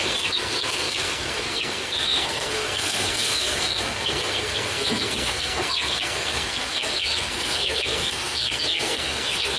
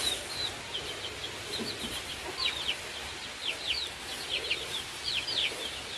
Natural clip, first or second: second